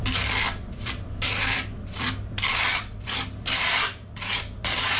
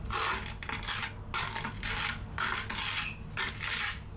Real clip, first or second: second